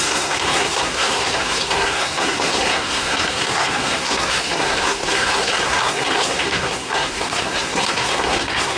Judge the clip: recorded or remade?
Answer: remade